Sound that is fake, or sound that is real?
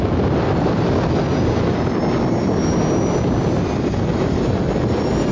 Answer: real